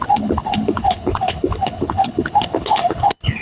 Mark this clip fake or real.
fake